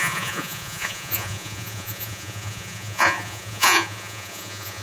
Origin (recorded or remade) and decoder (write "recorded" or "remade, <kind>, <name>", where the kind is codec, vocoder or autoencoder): remade, vocoder, Vocos